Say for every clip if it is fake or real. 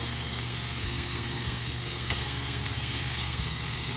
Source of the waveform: fake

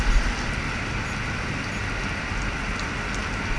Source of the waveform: real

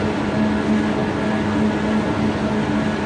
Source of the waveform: real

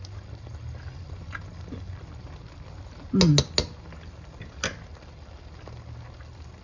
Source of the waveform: real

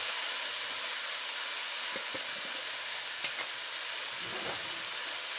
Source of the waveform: real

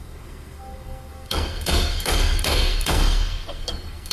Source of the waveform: fake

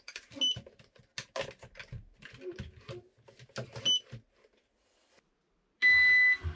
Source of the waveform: real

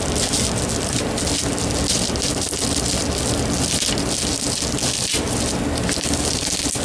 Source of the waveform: real